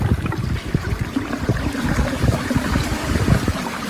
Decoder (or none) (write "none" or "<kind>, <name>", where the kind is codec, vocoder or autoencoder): vocoder, BigVGAN v2